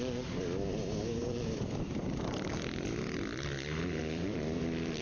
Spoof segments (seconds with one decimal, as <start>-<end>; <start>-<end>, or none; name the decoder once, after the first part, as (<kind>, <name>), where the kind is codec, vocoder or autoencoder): 1.2-2.5 (vocoder, BigVGAN v2); 4.0-5.0